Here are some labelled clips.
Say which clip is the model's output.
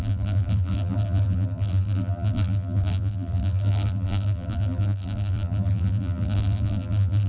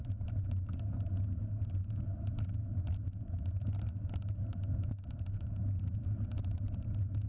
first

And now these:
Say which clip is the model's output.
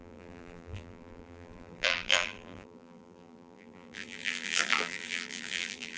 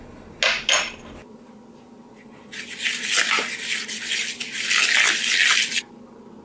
first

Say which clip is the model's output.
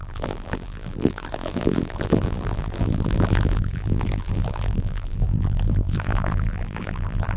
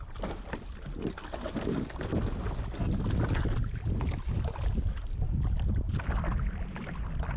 first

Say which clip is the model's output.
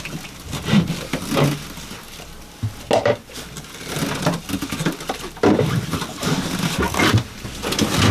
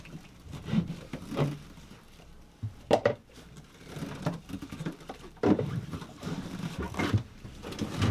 second